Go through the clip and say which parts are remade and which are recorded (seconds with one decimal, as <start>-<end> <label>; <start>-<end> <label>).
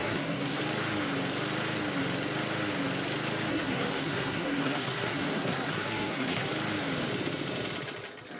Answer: 0.0-0.6 remade; 0.6-3.5 recorded; 3.5-6.5 remade; 6.5-8.4 recorded